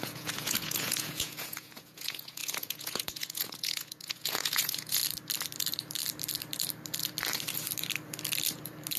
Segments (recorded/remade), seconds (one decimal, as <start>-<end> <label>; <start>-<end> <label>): 0.0-5.0 remade; 5.0-9.0 recorded